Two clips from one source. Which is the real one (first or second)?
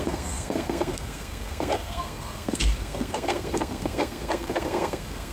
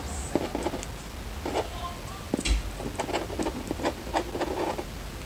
second